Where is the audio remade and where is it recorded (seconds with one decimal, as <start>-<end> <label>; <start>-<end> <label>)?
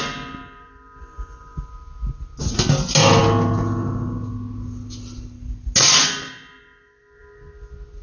0.0-8.0 recorded